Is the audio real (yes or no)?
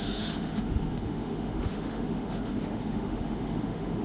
no